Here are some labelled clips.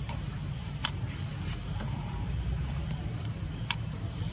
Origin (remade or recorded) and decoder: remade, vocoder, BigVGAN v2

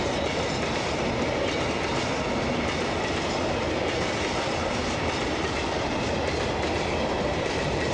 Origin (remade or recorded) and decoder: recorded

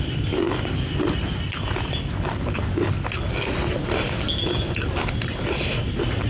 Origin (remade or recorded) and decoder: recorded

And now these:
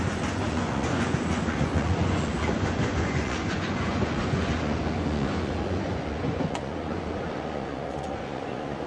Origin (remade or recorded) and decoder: remade, vocoder, Vocos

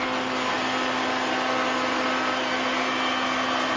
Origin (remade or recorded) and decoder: recorded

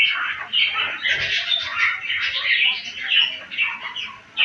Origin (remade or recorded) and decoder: recorded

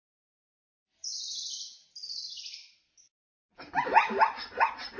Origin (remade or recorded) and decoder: recorded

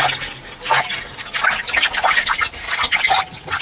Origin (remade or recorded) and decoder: recorded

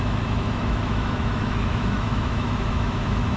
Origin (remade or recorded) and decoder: remade, autoencoder, DAC-VAE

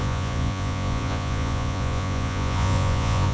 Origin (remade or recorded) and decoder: remade, vocoder, Vocos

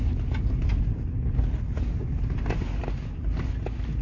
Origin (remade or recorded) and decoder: recorded